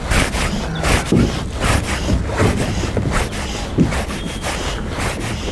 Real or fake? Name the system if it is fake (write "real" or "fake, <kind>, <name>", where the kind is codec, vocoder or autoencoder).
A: real